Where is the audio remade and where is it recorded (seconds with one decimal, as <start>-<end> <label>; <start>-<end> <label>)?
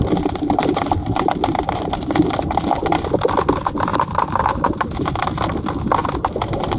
0.0-1.0 recorded; 1.0-1.8 remade; 1.8-3.9 recorded; 3.9-4.6 remade; 4.6-6.8 recorded